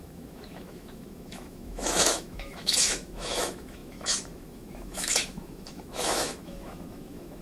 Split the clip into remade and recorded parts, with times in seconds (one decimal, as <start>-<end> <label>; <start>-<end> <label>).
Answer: 0.0-7.4 remade